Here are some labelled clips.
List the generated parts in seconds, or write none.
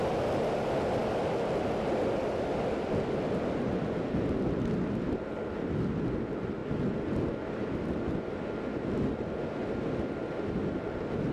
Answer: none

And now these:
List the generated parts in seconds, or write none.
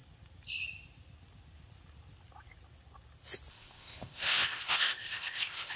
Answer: 3.5-5.8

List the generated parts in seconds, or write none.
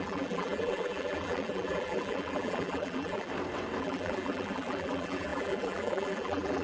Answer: 0.0-3.3; 3.8-6.6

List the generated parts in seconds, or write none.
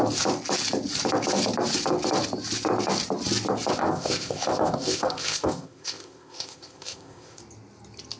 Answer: 3.7-7.4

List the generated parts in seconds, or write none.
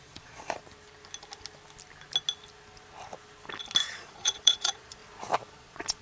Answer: 0.0-0.6; 3.9-5.0; 5.5-6.0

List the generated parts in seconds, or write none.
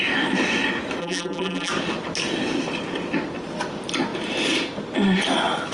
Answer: 1.0-1.7